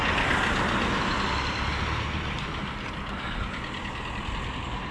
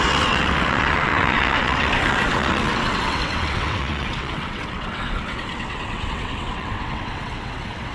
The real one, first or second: first